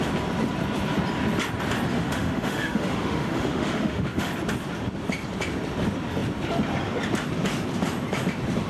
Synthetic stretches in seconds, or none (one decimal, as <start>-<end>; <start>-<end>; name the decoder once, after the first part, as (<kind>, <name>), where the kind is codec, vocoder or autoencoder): 1.9-4.3 (autoencoder, DAC-VAE)